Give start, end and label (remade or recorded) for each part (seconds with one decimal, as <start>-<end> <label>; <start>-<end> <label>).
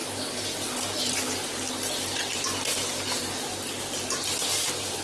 0.0-1.2 remade; 1.2-5.0 recorded